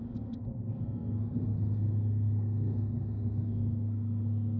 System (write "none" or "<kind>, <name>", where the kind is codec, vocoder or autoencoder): codec, SNAC